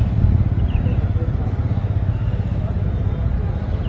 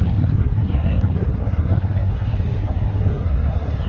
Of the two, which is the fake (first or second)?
second